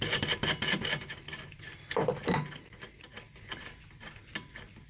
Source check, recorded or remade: recorded